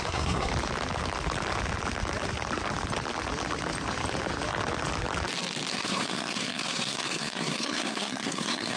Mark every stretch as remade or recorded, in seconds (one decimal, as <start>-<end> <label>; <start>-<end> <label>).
0.0-0.5 remade; 0.5-5.7 recorded; 5.7-8.8 remade